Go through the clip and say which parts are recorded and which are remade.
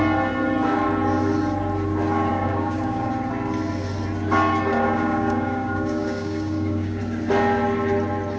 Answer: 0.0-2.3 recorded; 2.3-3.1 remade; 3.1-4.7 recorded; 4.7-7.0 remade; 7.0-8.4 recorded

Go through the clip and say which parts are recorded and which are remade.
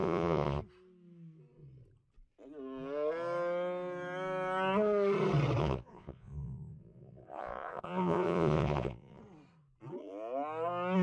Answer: 0.0-0.6 remade; 0.6-5.6 recorded; 5.6-9.2 remade; 9.2-11.0 recorded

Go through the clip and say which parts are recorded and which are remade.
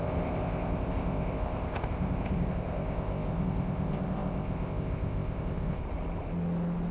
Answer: 0.0-5.8 remade; 5.8-6.9 recorded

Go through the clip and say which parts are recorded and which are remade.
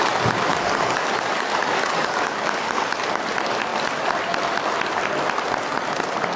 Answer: 0.0-0.5 recorded; 0.5-3.2 remade; 3.2-6.4 recorded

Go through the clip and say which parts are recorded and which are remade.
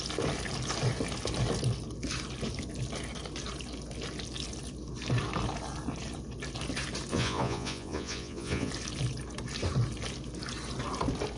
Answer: 0.0-7.1 recorded; 7.1-8.7 remade; 8.7-11.4 recorded